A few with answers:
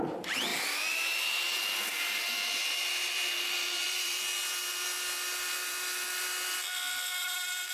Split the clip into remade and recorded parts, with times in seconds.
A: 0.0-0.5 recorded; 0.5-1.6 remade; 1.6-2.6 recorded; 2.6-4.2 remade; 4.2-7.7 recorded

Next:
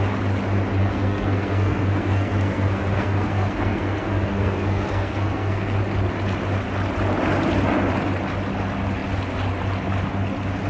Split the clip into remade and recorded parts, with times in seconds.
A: 0.0-0.8 recorded; 0.8-5.8 remade; 5.8-10.7 recorded

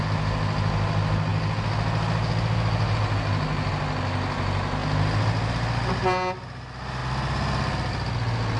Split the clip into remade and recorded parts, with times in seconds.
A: 0.0-8.6 recorded

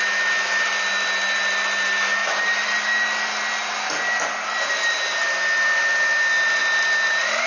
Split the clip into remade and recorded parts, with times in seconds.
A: 0.0-7.5 recorded

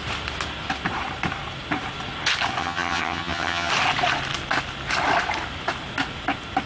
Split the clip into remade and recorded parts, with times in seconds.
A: 0.0-2.6 recorded; 2.6-3.7 remade; 3.7-6.7 recorded

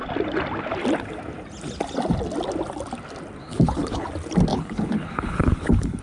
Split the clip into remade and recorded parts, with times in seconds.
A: 0.0-3.4 recorded; 3.4-4.1 remade; 4.1-4.5 recorded; 4.5-6.0 remade

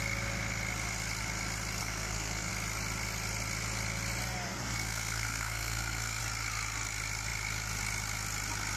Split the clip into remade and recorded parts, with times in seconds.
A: 0.0-1.8 recorded; 1.8-2.5 remade; 2.5-4.5 recorded; 4.5-6.2 remade; 6.2-8.8 recorded

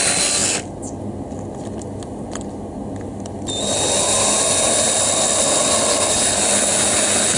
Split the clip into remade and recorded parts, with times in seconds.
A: 0.0-7.4 recorded